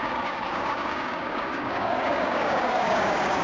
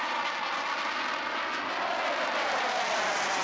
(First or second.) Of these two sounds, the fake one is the first